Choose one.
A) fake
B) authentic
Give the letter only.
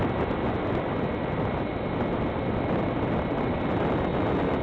B